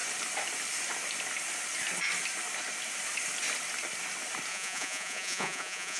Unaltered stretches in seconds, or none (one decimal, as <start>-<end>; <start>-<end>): 0.0-4.5